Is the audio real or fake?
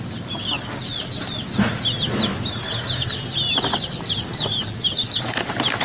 real